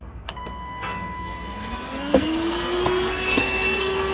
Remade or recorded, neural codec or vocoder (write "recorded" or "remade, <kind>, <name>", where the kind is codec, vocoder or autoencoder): remade, codec, SNAC